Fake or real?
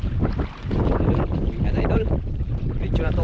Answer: fake